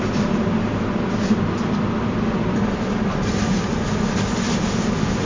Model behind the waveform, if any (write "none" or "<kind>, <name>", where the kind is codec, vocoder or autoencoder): none